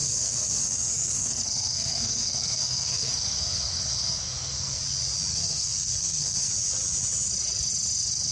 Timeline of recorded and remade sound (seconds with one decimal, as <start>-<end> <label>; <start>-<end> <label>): 0.0-4.8 remade; 4.8-5.3 recorded; 5.3-6.5 remade; 6.5-8.3 recorded